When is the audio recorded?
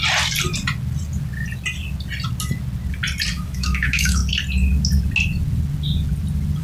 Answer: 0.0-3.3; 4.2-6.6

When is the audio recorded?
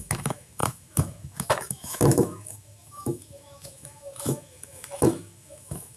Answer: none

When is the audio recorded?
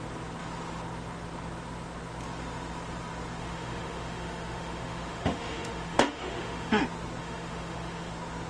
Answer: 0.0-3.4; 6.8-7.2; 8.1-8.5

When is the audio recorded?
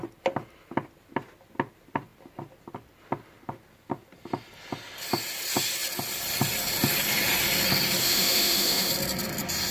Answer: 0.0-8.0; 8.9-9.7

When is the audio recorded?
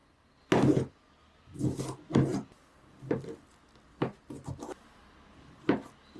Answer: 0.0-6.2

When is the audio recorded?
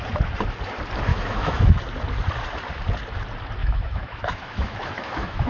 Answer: 0.0-1.1; 1.8-3.6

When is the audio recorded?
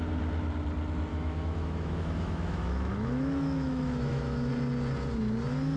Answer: 0.0-1.1; 4.5-5.8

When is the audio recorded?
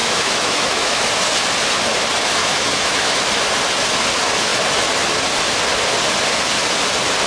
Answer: 1.1-2.4; 3.2-7.3